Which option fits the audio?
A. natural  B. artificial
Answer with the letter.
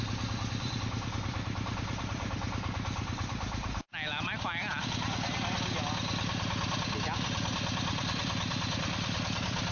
B